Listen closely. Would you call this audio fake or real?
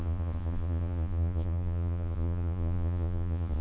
fake